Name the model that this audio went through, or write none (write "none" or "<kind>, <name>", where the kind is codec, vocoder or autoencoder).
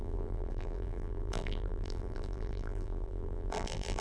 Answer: vocoder, BigVGAN v2